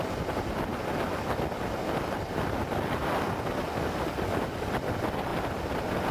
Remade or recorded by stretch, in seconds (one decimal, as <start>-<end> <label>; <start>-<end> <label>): 0.0-3.7 recorded; 3.7-4.7 remade; 4.7-6.1 recorded